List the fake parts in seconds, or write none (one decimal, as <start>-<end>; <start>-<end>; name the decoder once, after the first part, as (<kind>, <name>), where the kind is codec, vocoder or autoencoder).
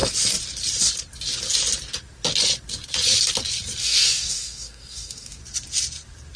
3.8-5.4 (codec, DAC)